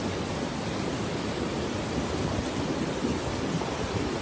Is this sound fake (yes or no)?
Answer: no